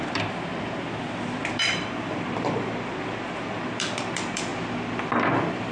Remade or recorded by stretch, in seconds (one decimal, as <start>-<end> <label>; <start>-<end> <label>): 0.0-0.5 remade; 0.5-1.5 recorded; 1.5-4.5 remade; 4.5-5.3 recorded; 5.3-5.7 remade